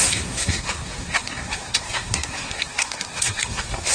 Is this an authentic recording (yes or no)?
no